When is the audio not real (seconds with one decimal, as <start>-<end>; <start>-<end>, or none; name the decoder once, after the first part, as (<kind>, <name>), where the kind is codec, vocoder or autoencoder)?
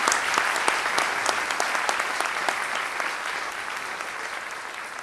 none